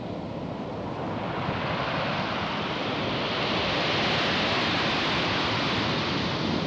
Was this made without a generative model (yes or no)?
yes